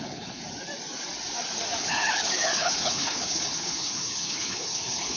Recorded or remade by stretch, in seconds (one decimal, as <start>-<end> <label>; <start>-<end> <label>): 0.0-0.4 remade; 0.4-1.8 recorded; 1.8-5.2 remade